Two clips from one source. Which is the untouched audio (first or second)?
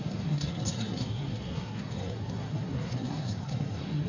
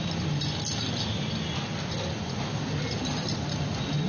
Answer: second